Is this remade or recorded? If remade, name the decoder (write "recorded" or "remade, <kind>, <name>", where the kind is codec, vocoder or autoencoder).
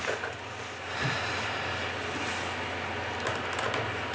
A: recorded